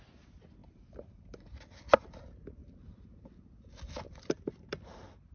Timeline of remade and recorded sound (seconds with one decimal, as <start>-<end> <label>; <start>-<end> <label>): 0.0-0.6 recorded; 0.6-1.6 remade; 1.6-2.6 recorded; 2.6-3.2 remade; 3.2-5.3 recorded